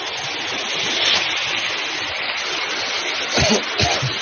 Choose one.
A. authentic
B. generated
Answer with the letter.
A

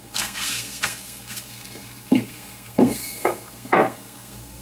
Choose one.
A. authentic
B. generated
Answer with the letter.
B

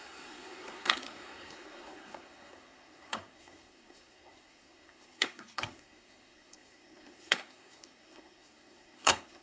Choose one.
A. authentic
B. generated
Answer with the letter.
B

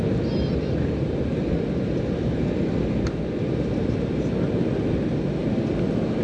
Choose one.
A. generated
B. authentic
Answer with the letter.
B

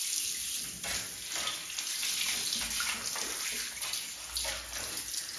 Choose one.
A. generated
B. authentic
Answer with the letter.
B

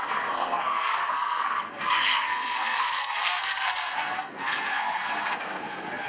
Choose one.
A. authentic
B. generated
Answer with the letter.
B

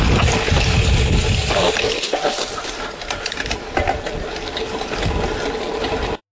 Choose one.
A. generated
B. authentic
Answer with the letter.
B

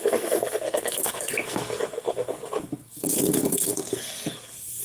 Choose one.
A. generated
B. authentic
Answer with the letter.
A